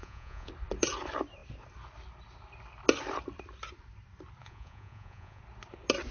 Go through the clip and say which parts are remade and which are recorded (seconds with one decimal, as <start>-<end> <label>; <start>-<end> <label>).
0.0-0.5 remade; 0.5-4.4 recorded; 4.4-5.4 remade; 5.4-6.1 recorded